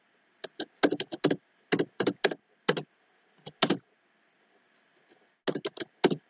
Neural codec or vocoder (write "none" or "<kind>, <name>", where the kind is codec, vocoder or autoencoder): none